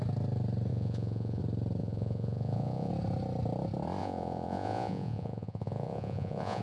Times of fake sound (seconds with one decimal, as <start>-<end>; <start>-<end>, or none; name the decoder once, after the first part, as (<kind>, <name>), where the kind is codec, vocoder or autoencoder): 0.7-1.4 (vocoder, Vocos); 1.8-2.9; 4.0-6.6